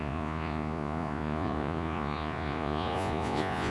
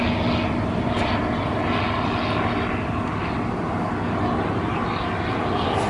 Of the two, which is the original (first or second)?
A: second